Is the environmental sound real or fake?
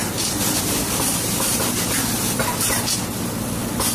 fake